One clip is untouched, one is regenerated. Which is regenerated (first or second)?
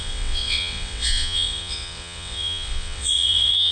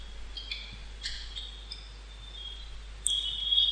first